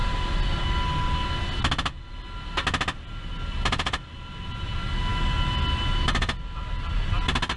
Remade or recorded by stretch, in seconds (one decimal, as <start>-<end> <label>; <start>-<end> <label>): 0.0-7.6 recorded